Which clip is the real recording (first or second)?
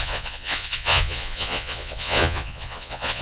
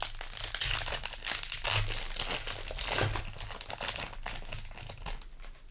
second